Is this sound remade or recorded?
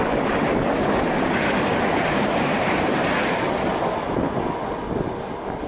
recorded